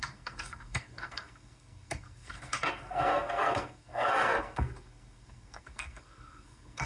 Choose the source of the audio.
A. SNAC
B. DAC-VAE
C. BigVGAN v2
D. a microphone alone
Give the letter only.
A